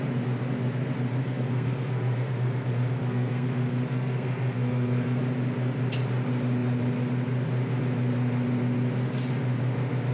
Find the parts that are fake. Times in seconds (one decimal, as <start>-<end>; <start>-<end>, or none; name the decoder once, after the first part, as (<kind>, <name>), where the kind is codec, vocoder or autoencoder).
1.2-5.2 (codec, SNAC)